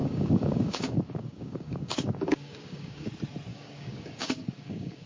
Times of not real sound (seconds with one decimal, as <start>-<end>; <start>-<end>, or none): 0.0-3.1; 3.5-5.1